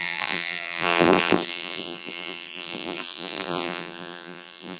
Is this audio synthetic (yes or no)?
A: yes